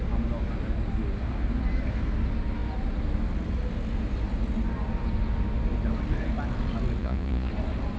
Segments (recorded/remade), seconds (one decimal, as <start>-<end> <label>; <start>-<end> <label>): 0.0-7.0 recorded; 7.0-7.5 remade; 7.5-8.0 recorded